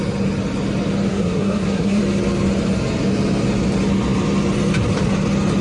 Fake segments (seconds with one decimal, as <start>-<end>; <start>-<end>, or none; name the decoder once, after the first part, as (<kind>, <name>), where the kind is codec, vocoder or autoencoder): 1.1-2.0 (codec, SNAC)